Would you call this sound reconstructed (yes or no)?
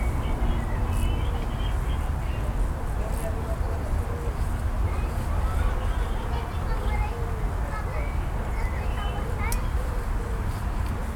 no